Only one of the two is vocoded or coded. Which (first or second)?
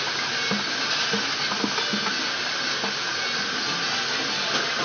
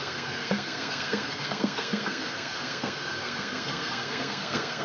second